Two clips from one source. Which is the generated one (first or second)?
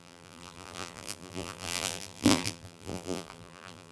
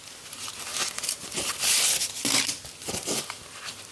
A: first